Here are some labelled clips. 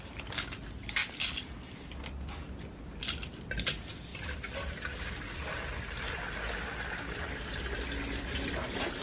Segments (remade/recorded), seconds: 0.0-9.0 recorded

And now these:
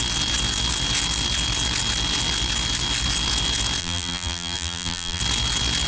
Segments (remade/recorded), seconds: 0.0-3.8 recorded; 3.8-5.2 remade; 5.2-5.9 recorded

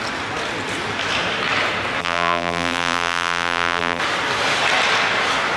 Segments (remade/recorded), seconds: 0.0-2.0 recorded; 2.0-4.0 remade; 4.0-5.6 recorded